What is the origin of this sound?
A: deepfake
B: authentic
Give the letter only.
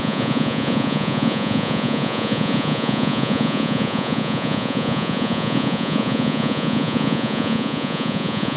A